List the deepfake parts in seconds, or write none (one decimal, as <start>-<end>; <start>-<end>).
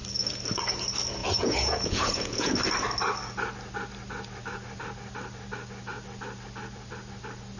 1.2-2.5